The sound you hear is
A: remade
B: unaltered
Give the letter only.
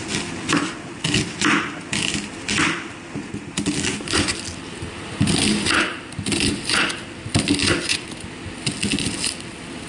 B